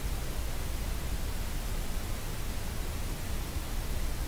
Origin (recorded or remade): recorded